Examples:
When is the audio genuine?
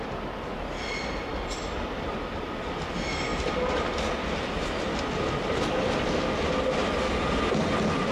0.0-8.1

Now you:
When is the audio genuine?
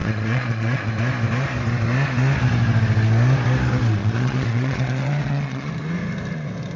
0.9-4.0; 5.7-6.8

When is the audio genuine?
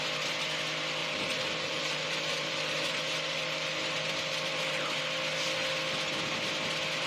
0.0-1.0; 5.0-7.1